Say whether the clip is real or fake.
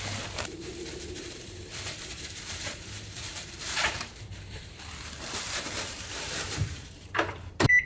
fake